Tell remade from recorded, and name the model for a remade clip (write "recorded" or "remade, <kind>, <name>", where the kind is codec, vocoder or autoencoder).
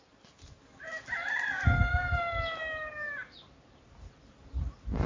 recorded